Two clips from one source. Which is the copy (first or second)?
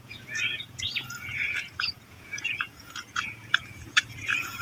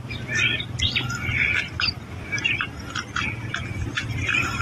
first